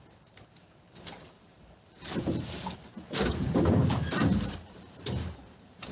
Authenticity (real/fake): fake